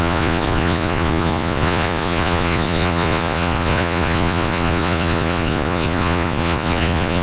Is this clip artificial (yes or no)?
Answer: yes